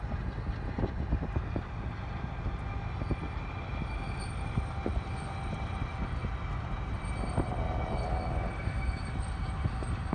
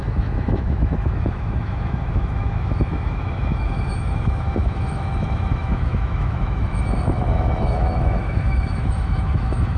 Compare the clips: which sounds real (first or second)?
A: first